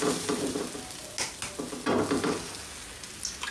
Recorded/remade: recorded